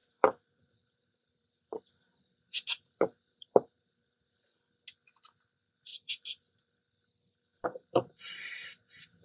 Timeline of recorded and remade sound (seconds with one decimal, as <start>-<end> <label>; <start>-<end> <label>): 0.0-4.6 remade; 4.6-5.9 recorded; 5.9-6.7 remade; 6.7-7.5 recorded; 7.5-9.2 remade